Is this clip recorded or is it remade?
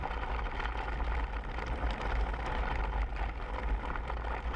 recorded